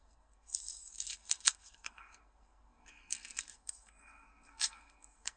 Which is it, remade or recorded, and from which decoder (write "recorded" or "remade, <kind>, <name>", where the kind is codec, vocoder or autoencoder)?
remade, codec, SNAC